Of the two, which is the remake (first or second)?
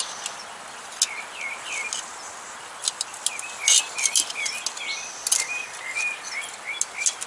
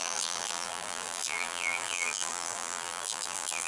second